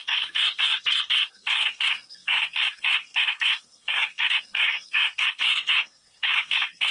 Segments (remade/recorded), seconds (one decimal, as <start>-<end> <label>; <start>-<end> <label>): 0.0-6.9 remade